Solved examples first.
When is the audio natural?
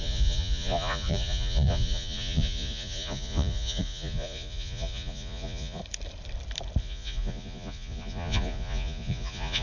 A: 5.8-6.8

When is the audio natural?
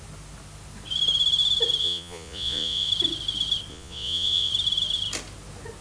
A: 0.0-1.8; 2.9-3.7; 4.5-5.8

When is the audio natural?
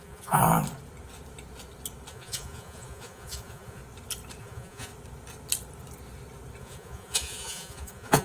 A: 0.4-2.1; 3.8-4.4; 4.9-6.6